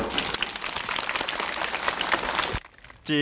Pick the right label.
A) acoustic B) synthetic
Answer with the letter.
A